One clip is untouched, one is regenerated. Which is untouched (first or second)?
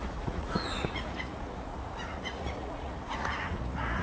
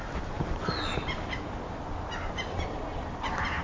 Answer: second